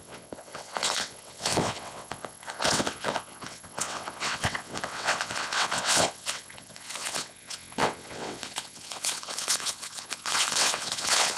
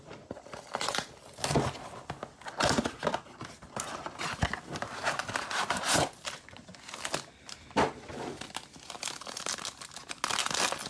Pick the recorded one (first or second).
second